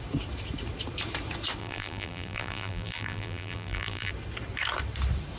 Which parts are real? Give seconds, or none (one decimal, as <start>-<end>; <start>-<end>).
0.0-1.6; 4.1-5.4